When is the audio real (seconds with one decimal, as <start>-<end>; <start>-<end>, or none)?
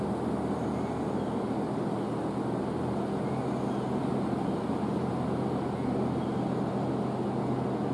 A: 0.0-4.1; 5.1-7.9